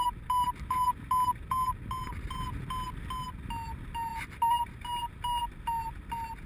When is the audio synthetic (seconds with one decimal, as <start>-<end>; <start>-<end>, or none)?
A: none